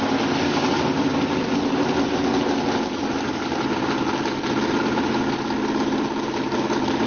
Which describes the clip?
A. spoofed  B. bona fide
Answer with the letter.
B